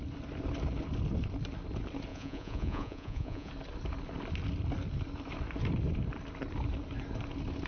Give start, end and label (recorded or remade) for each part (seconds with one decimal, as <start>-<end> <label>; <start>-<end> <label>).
0.0-2.1 recorded; 2.1-3.5 remade; 3.5-7.7 recorded